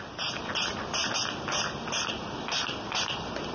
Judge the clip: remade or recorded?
recorded